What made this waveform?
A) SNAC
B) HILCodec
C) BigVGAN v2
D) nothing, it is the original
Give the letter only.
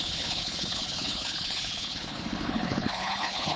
B